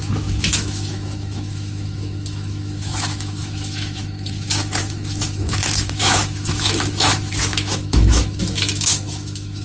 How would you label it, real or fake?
fake